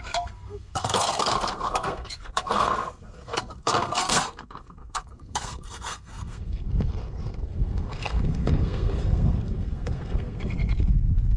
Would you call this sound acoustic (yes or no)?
no